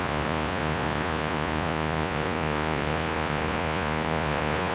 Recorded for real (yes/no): no